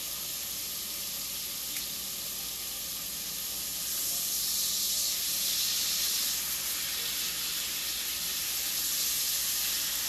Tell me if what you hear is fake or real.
real